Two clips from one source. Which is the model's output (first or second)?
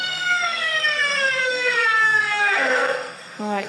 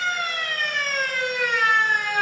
first